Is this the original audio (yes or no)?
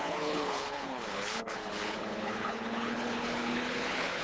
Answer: no